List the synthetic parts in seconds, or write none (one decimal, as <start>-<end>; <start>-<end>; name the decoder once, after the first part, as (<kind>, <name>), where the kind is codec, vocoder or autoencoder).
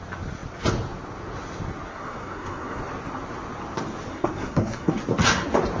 1.9-2.8 (codec, SNAC); 4.1-5.0